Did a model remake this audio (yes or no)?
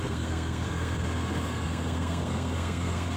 yes